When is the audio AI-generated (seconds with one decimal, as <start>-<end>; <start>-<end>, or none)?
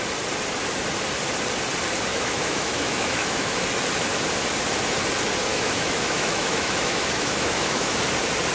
2.1-3.6; 5.5-8.0